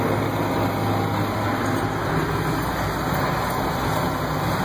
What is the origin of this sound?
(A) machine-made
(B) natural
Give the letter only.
B